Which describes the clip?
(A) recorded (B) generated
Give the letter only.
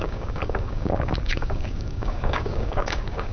B